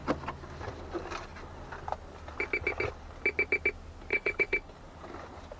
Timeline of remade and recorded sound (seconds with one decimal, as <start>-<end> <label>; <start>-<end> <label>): 0.0-4.1 recorded; 4.1-4.7 remade; 4.7-5.6 recorded